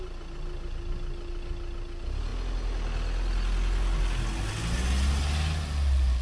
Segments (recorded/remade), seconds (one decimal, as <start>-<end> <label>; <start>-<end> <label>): 0.0-6.2 recorded

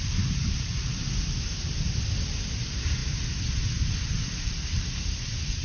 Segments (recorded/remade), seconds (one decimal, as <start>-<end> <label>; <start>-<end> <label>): 0.0-1.0 remade; 1.0-2.3 recorded; 2.3-5.6 remade